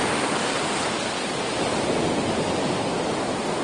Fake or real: real